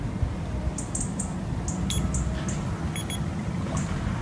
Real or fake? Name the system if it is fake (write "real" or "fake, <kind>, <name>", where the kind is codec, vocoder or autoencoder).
real